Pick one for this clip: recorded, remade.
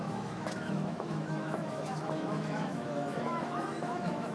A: remade